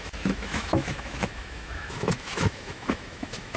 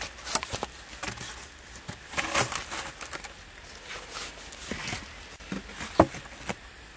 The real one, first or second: second